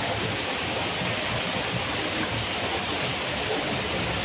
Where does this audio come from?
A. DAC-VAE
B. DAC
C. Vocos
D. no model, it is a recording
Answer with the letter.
D